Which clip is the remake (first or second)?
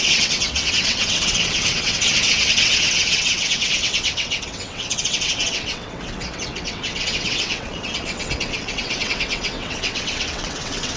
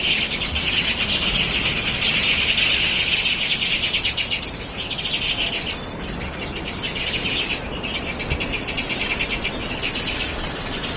first